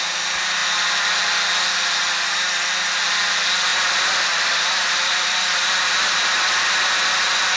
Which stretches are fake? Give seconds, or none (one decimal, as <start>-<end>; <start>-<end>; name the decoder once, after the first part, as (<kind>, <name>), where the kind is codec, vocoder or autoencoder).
0.6-1.1 (vocoder, BigVGAN v2); 3.7-6.5